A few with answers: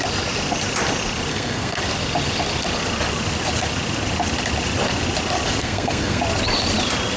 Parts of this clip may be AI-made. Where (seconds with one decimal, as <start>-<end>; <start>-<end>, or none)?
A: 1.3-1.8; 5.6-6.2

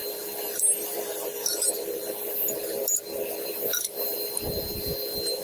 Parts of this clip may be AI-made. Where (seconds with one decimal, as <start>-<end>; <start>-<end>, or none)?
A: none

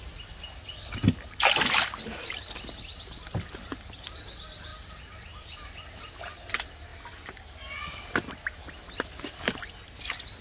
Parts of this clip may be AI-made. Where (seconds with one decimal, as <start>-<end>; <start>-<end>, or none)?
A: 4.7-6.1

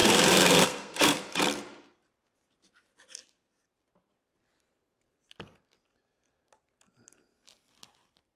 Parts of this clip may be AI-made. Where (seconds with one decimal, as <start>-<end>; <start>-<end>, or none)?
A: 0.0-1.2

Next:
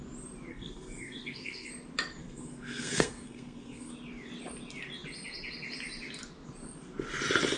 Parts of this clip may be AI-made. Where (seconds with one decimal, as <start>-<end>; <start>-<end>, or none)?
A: 0.5-1.7; 2.2-3.9

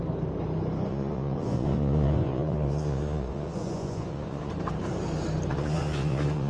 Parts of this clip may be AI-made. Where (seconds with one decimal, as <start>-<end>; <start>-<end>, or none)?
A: 0.9-4.5; 5.5-6.5